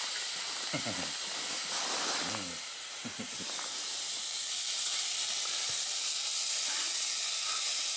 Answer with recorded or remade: recorded